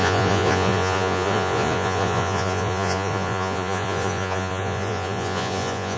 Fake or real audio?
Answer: fake